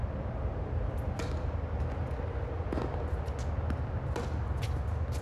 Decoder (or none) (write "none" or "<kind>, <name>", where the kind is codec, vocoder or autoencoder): none